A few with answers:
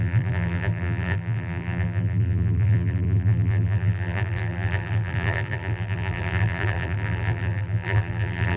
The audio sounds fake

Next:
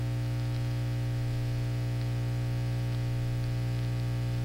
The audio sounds real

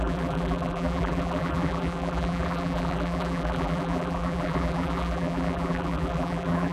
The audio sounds fake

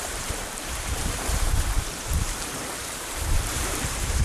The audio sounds fake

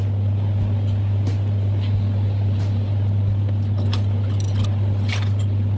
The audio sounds real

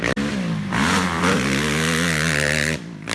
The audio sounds real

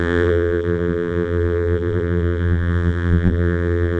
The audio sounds fake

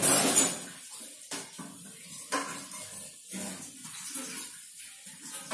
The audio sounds real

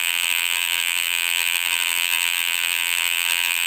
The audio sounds fake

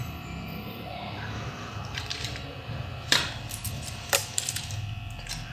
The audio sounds fake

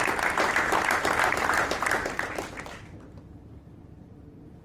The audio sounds fake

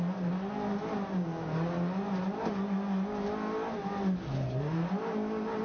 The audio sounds real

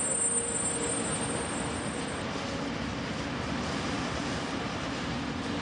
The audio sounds fake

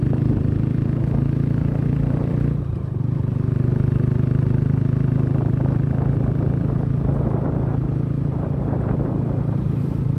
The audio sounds fake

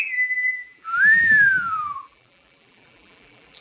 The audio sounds fake